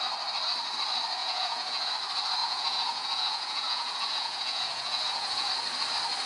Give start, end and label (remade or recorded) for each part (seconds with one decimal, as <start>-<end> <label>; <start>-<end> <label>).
0.0-1.2 recorded; 1.2-1.9 remade; 1.9-2.4 recorded; 2.4-5.5 remade; 5.5-6.3 recorded